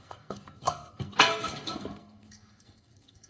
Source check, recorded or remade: remade